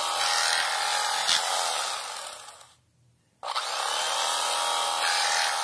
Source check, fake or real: real